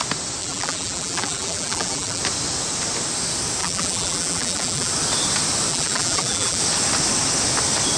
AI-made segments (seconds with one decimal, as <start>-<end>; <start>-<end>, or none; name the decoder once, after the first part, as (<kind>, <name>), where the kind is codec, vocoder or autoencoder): 0.4-2.2 (vocoder, BigVGAN v2); 3.6-4.9; 5.7-6.6